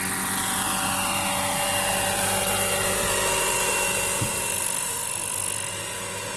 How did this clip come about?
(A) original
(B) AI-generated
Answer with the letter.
A